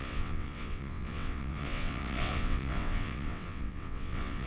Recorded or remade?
remade